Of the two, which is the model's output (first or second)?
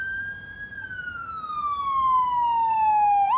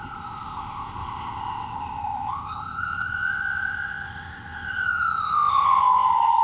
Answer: second